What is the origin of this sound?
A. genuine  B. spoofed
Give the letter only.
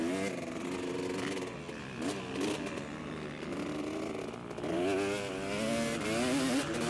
A